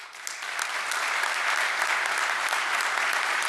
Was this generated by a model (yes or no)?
no